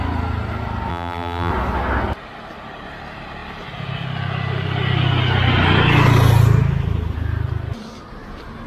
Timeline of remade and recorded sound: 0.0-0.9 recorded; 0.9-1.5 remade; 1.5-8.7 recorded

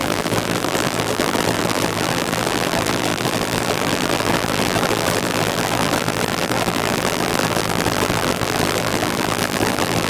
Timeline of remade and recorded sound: 0.0-10.1 remade